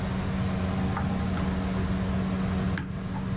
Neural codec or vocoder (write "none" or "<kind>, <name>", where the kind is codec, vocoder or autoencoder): none